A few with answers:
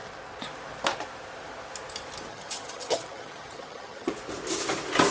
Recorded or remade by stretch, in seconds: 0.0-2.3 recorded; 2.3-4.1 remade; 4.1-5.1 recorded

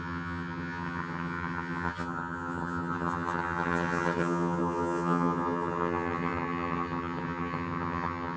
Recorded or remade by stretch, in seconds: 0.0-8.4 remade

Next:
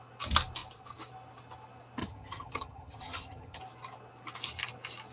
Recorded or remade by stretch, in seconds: 0.0-2.0 recorded; 2.0-3.6 remade; 3.6-5.1 recorded

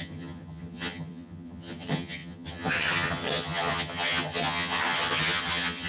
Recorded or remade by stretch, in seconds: 0.0-5.9 remade

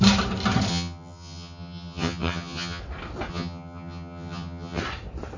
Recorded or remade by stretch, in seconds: 0.0-0.7 recorded; 0.7-2.8 remade; 2.8-3.3 recorded; 3.3-4.8 remade; 4.8-5.4 recorded